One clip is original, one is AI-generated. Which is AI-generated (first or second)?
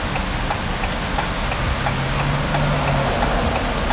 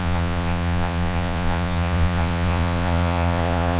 second